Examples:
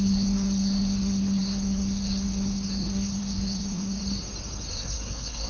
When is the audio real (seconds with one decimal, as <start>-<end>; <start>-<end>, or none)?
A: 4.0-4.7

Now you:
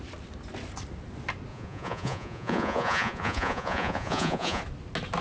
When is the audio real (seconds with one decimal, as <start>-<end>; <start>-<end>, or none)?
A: 0.0-1.5; 4.6-5.2

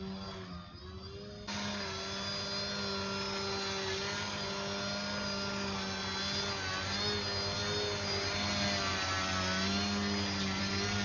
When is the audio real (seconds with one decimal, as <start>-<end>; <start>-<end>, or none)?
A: 0.0-11.0

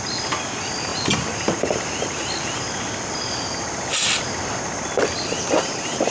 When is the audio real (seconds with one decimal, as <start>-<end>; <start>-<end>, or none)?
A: 0.0-6.1

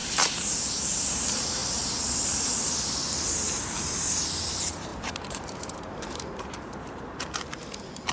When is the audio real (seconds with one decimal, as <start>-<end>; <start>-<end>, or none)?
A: 1.6-4.5

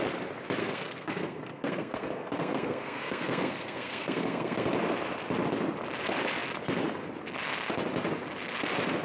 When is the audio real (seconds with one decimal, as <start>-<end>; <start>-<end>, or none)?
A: 0.0-0.6; 4.7-9.0